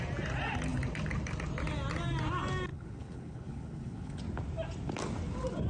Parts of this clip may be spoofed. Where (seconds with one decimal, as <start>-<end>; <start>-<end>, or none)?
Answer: 2.7-4.2